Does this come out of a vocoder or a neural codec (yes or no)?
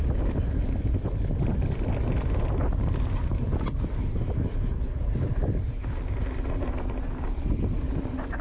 no